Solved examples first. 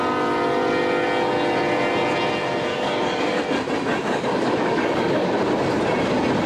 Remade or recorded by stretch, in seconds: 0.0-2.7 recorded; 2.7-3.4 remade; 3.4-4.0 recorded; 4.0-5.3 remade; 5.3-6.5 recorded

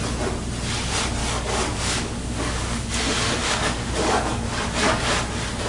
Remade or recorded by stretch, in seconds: 0.0-1.2 recorded; 1.2-2.9 remade; 2.9-3.4 recorded; 3.4-5.1 remade; 5.1-5.7 recorded

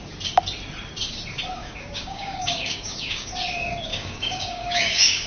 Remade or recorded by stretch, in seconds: 0.0-1.6 recorded; 1.6-3.3 remade; 3.3-3.9 recorded; 3.9-5.3 remade